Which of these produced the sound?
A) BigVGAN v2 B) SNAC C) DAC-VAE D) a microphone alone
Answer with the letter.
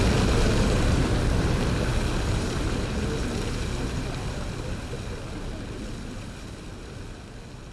D